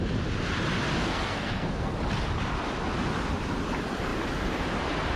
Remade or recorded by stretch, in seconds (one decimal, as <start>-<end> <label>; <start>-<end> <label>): 0.0-1.0 recorded; 1.0-1.9 remade; 1.9-5.2 recorded